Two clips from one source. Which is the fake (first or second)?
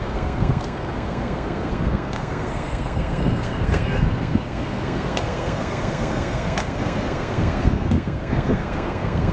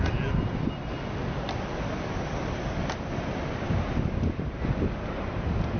first